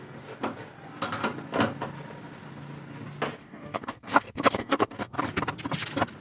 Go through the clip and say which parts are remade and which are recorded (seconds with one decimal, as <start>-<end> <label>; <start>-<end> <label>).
0.0-3.4 recorded; 3.4-5.2 remade; 5.2-6.2 recorded